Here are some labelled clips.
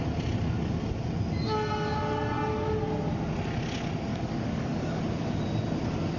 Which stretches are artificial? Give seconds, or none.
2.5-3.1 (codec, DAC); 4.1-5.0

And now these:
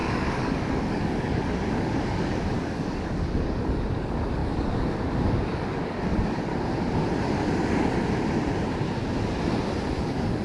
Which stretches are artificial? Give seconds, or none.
0.0-6.5 (codec, DAC); 10.0-10.4

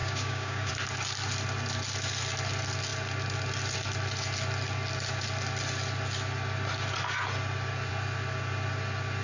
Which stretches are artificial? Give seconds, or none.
0.0-0.7 (codec, DAC)

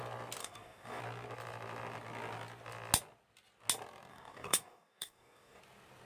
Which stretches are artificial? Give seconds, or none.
0.4-1.0 (codec, DAC); 4.1-5.6

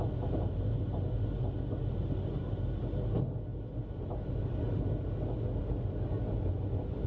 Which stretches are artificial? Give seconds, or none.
none